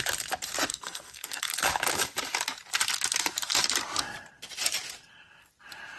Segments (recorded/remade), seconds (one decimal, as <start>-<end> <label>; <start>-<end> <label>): 0.0-0.7 recorded; 0.7-1.4 remade; 1.4-6.0 recorded